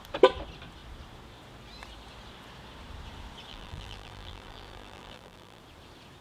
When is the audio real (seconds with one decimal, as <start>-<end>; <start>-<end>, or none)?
0.0-3.5; 5.6-6.2